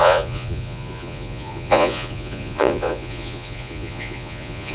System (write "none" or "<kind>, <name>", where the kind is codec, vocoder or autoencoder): vocoder, Vocos